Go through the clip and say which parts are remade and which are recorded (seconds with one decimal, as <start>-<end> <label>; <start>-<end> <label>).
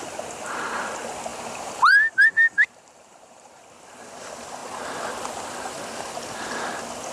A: 0.0-1.3 recorded; 1.3-3.6 remade; 3.6-7.1 recorded